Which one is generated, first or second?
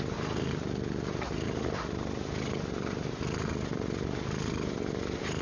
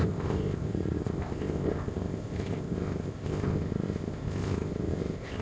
second